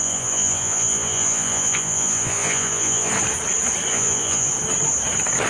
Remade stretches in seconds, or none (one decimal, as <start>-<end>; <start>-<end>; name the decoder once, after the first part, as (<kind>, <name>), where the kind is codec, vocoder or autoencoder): 0.0-3.1 (vocoder, Vocos); 3.9-4.5

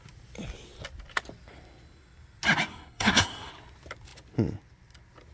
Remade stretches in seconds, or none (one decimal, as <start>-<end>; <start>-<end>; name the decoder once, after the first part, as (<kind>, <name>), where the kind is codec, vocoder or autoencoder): 2.7-3.5 (codec, SNAC)

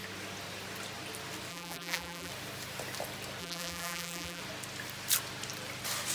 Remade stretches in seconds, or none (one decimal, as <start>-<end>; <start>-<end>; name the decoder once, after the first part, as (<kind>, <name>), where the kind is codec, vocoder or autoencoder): 1.5-2.3 (vocoder, BigVGAN v2); 3.4-4.4

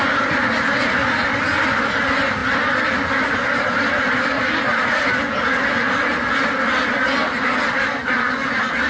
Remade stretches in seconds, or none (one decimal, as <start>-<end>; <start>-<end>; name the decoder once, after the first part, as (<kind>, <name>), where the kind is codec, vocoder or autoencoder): none

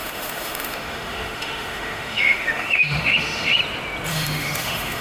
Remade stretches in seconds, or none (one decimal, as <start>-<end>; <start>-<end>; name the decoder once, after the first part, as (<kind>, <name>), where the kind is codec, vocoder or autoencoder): 0.0-3.6 (autoencoder, DAC-VAE); 4.1-5.0

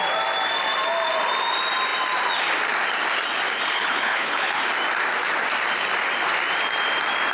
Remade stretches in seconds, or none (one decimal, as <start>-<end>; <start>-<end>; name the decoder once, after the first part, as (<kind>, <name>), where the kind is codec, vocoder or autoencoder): 3.7-4.7 (codec, HILCodec)